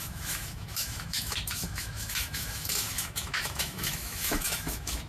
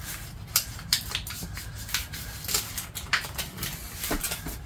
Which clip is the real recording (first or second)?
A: second